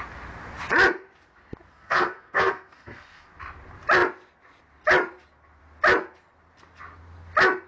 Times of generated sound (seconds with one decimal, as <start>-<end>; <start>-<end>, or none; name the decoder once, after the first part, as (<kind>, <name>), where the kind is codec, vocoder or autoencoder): 1.7-3.3 (codec, SNAC)